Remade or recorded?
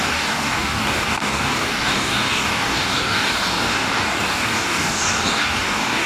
remade